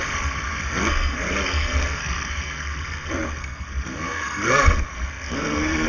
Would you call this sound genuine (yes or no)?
no